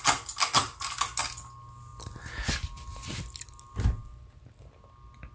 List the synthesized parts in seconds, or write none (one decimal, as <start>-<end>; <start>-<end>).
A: none